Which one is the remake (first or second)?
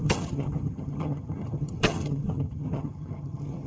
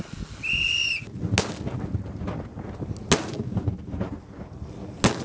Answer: first